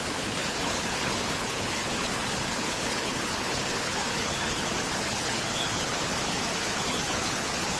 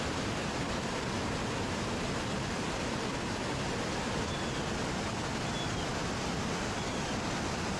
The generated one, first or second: first